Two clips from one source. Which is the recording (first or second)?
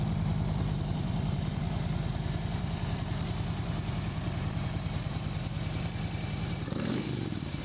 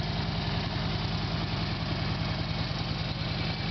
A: second